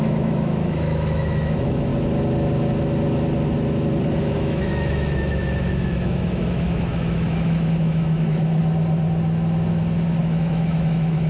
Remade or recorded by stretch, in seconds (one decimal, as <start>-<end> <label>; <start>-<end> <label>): 0.0-1.9 remade; 1.9-4.2 recorded; 4.2-8.6 remade; 8.6-10.2 recorded; 10.2-11.3 remade